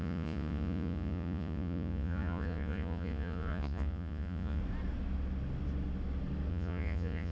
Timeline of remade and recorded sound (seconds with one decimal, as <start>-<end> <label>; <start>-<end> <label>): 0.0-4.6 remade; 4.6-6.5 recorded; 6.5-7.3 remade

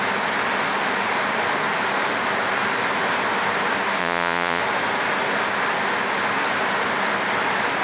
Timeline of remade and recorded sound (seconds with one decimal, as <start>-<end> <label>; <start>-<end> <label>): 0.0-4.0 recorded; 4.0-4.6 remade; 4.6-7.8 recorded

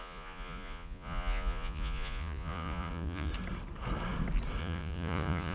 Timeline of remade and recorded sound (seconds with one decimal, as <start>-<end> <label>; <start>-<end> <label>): 0.0-3.3 remade; 3.3-4.6 recorded; 4.6-5.5 remade

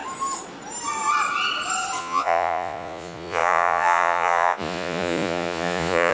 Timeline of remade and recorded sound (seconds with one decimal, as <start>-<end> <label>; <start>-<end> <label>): 0.0-2.0 recorded; 2.0-6.1 remade

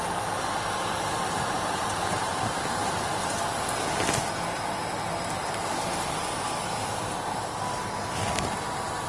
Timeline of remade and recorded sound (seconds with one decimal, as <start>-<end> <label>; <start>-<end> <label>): 0.0-9.1 recorded